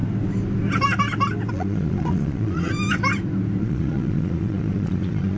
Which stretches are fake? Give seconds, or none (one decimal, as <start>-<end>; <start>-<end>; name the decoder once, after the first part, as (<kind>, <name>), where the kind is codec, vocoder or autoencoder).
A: 1.5-2.7 (vocoder, Vocos); 3.6-5.4